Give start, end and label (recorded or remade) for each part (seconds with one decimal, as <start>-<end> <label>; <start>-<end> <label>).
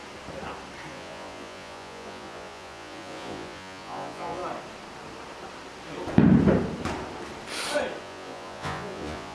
0.0-0.9 recorded; 0.9-4.4 remade; 4.4-8.0 recorded; 8.0-9.3 remade